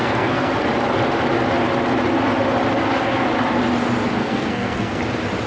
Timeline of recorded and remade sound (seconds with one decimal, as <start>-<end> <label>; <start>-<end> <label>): 0.0-0.6 remade; 0.6-4.2 recorded; 4.2-5.0 remade; 5.0-5.5 recorded